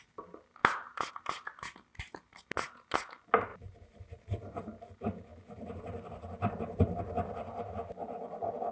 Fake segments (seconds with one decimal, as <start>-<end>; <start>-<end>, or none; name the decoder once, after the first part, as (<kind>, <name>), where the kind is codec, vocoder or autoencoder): 1.9-2.5 (vocoder, BigVGAN v2); 3.5-4.6; 5.3-7.7